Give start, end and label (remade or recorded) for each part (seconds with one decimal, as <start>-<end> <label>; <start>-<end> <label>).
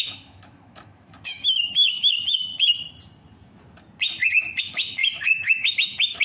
0.0-2.5 remade; 2.5-4.6 recorded; 4.6-6.2 remade